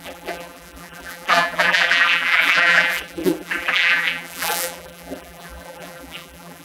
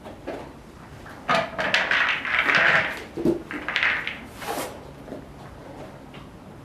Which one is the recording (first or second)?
second